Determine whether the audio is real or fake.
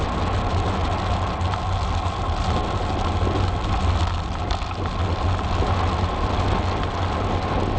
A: real